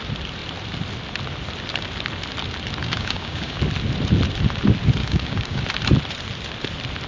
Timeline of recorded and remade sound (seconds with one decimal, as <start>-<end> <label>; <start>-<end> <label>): 0.0-2.8 recorded; 2.8-3.6 remade; 3.6-5.0 recorded; 5.0-5.6 remade; 5.6-7.1 recorded